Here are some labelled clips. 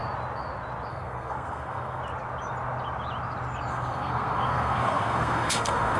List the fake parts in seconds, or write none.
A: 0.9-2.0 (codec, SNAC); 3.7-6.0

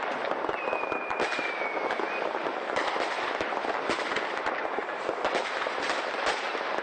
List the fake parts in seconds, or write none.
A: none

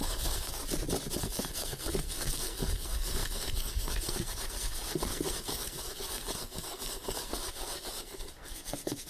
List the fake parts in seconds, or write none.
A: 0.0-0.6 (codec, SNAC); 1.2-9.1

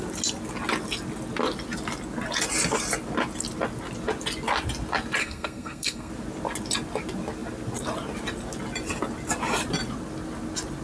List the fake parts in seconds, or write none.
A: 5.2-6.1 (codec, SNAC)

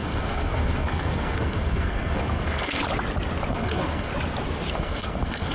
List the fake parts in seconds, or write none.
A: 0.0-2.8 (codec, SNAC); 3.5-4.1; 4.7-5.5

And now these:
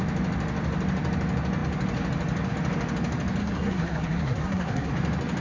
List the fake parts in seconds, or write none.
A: 3.4-4.9 (codec, SNAC)